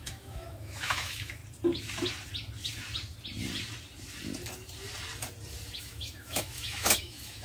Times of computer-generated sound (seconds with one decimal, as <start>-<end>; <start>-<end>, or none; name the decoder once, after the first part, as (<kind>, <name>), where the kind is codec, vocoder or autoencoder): 0.0-1.4 (autoencoder, DAC-VAE); 5.8-7.4